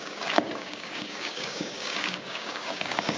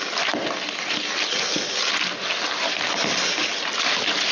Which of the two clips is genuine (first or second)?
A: second